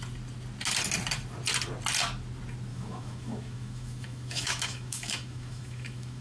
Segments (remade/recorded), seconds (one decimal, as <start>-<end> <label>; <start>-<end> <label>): 0.0-2.7 recorded; 2.7-6.2 remade